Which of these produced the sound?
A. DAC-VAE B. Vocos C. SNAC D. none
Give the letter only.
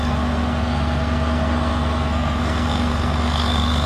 C